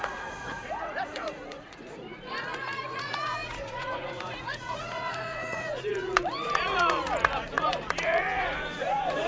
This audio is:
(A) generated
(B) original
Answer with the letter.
A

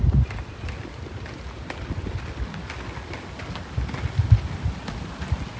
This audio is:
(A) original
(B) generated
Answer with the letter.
A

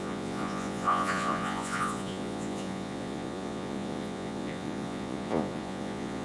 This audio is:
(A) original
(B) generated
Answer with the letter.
B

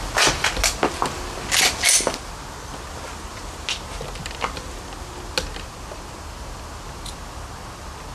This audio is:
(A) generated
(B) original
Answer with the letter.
B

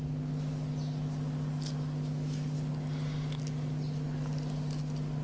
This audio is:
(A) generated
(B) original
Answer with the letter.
B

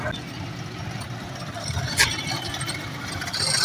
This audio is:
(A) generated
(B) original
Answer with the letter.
B